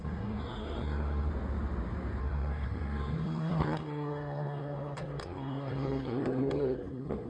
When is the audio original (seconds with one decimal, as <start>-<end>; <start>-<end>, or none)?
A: 1.3-2.2